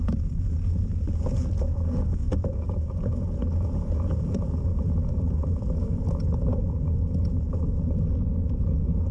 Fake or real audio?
fake